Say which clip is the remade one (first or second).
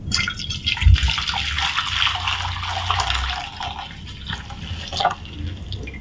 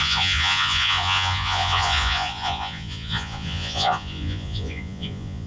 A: second